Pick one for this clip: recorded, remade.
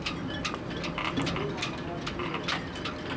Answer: recorded